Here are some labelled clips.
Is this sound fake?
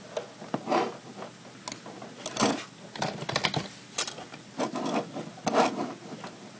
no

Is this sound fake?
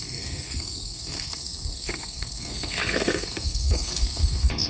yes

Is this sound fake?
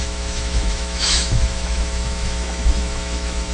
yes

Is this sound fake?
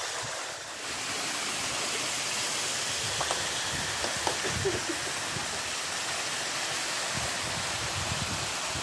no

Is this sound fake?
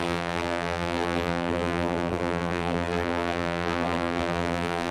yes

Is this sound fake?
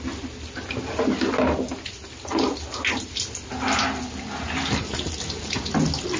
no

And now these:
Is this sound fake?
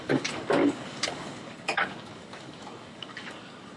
yes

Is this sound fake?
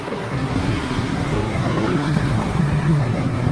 yes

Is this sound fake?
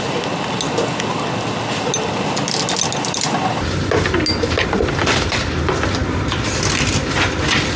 no